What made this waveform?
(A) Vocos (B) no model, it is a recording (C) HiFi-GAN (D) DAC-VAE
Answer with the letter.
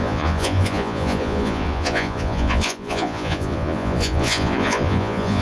A